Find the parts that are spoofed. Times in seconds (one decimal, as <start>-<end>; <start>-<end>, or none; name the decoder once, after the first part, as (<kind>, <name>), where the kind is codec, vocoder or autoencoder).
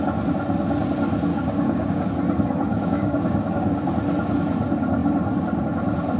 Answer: 1.3-2.1 (codec, DAC); 2.7-3.8